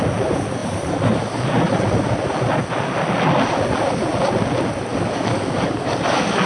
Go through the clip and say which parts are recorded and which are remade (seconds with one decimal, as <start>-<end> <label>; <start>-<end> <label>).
0.0-4.9 recorded; 4.9-6.5 remade